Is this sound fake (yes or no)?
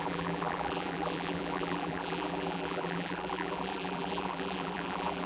yes